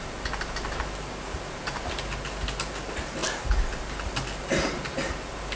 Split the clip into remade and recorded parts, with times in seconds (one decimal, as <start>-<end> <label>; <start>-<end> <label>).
0.0-5.6 recorded

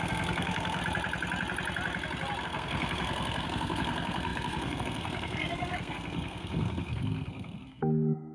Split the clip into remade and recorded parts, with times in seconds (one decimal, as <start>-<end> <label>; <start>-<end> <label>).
0.0-0.8 remade; 0.8-2.4 recorded; 2.4-8.3 remade

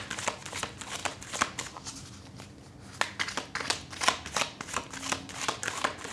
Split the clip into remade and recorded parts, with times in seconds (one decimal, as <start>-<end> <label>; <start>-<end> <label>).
0.0-6.1 recorded